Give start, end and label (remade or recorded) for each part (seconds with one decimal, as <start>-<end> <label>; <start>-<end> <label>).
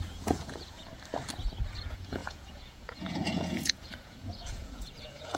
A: 0.0-0.9 remade; 0.9-1.8 recorded; 1.8-5.4 remade